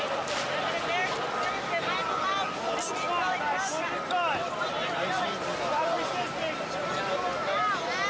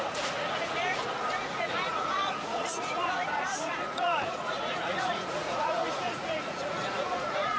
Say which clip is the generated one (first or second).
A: second